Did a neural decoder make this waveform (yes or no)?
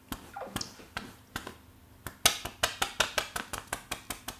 no